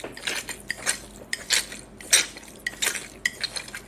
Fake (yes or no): no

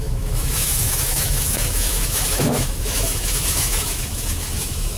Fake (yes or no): yes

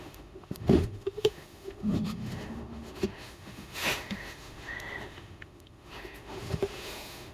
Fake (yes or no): yes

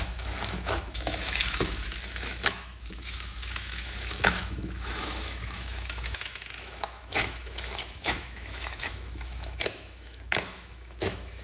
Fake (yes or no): yes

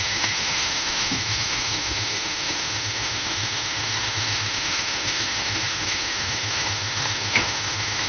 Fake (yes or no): yes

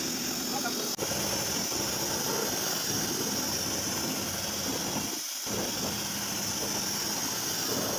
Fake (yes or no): no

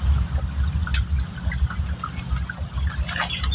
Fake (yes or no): no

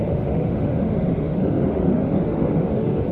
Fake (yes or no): yes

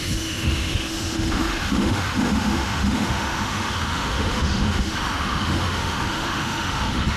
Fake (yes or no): yes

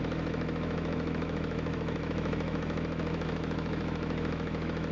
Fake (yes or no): yes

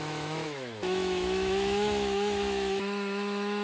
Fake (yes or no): yes